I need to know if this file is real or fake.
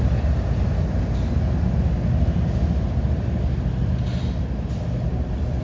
real